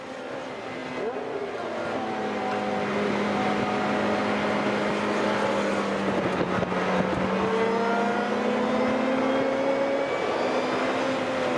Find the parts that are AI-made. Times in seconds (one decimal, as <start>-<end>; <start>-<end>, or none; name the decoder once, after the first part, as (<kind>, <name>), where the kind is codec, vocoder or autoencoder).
none